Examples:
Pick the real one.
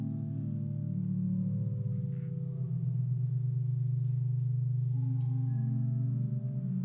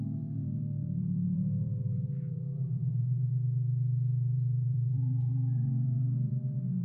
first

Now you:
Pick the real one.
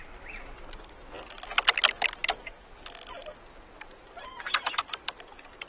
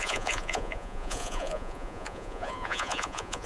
first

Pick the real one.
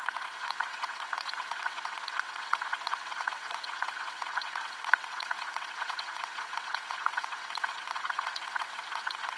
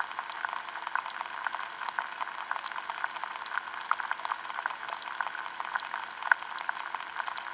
second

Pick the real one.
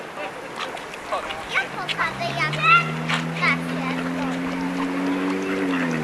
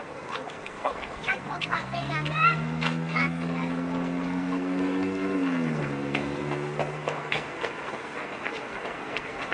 first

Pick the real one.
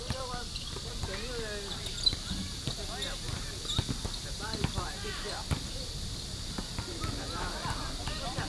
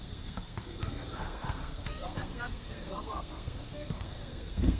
first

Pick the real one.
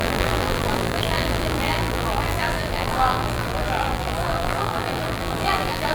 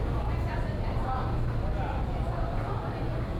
second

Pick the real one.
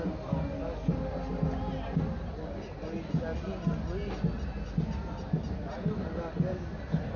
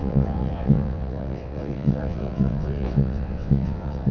first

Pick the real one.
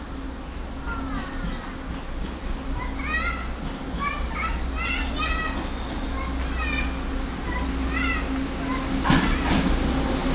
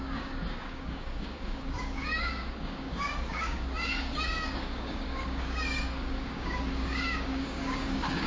first